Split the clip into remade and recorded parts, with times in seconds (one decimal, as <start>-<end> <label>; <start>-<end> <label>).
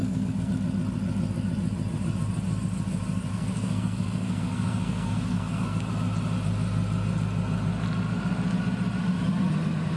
0.0-0.5 remade; 0.5-3.3 recorded; 3.3-5.8 remade; 5.8-10.0 recorded